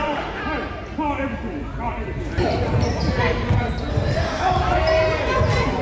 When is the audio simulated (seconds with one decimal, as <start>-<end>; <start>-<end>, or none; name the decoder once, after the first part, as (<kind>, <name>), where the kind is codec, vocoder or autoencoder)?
0.0-0.4 (autoencoder, DAC-VAE); 3.9-4.4